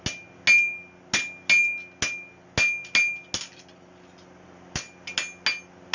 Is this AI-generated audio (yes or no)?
no